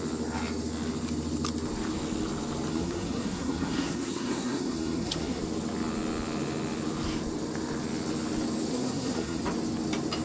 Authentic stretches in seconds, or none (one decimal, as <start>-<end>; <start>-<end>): 0.0-2.7; 5.4-8.7; 9.4-10.2